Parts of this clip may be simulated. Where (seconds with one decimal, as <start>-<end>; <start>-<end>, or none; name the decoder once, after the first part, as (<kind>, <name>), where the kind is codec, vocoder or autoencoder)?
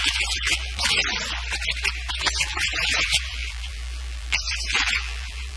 0.0-1.0 (vocoder, BigVGAN v2); 2.1-5.6